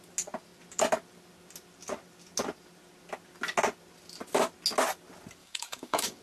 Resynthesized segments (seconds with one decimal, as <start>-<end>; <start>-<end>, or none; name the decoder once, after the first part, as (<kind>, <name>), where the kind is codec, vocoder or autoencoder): 5.4-6.2 (codec, DAC)